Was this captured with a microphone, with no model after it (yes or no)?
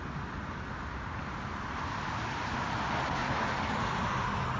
yes